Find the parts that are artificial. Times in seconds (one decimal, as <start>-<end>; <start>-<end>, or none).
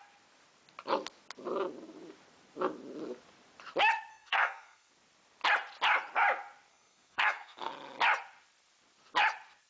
4.1-4.9; 6.7-7.7